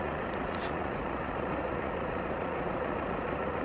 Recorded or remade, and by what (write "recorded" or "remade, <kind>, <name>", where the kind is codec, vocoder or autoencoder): remade, vocoder, Vocos